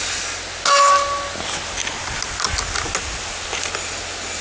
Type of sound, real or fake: real